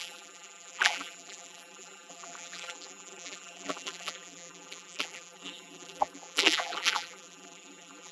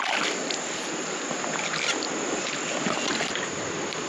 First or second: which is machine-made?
first